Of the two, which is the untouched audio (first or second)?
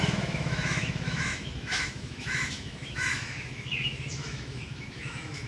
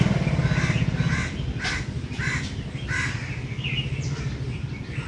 second